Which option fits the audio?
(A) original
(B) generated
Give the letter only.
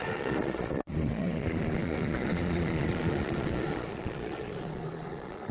B